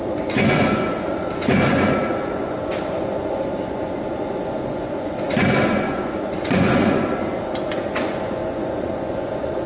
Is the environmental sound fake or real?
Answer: fake